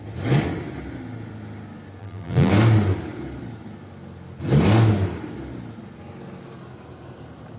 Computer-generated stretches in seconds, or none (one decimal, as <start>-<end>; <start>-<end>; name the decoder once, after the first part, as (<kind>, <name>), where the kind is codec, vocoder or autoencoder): 2.0-2.5 (vocoder, BigVGAN v2)